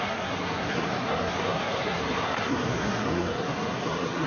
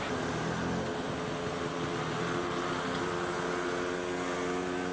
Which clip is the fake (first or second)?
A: first